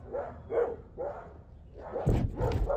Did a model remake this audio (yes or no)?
no